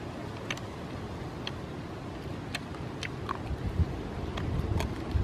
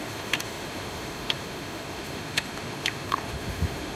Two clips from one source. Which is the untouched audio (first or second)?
first